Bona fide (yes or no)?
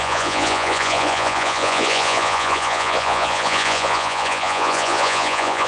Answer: no